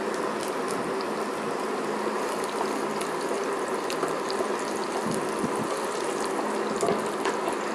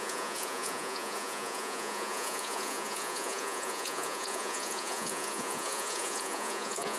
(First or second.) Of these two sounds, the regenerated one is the second